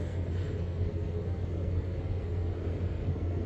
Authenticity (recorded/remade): remade